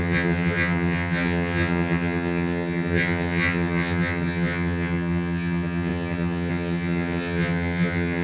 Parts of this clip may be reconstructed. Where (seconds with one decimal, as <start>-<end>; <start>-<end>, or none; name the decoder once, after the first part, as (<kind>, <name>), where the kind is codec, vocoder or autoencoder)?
0.0-8.2 (vocoder, HiFi-GAN)